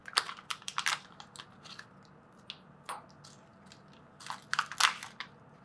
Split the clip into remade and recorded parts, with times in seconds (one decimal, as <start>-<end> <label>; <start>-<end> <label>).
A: 0.0-0.9 remade; 0.9-5.6 recorded